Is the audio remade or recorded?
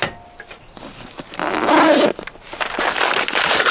recorded